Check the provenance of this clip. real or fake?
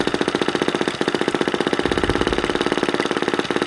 real